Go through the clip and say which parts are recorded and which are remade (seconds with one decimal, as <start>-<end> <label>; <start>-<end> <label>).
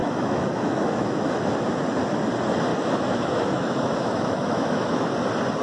0.0-1.5 remade; 1.5-2.7 recorded; 2.7-5.1 remade; 5.1-5.6 recorded